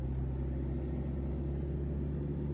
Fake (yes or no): no